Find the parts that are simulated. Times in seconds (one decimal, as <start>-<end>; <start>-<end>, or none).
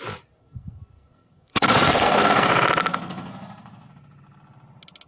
0.4-2.5; 2.9-3.9